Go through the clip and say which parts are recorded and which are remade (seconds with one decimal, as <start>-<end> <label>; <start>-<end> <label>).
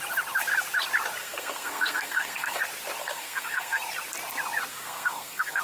0.0-1.2 recorded; 1.2-2.6 remade; 2.6-3.0 recorded; 3.0-3.8 remade; 3.8-4.7 recorded; 4.7-5.6 remade